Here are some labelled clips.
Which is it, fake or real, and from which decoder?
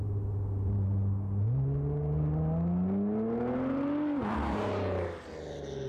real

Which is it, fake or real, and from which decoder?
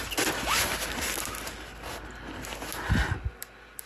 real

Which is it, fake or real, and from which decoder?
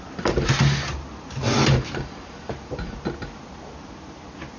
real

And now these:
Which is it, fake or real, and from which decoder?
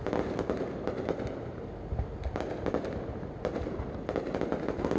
real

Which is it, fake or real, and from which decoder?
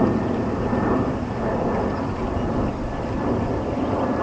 real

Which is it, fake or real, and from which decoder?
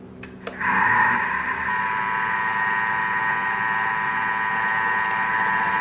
real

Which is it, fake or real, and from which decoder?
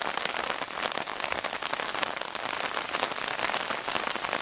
real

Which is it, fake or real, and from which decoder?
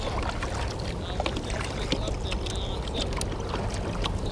real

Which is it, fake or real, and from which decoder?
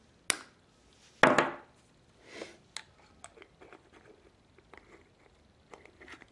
real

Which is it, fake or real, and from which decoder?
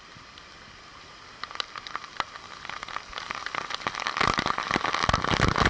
real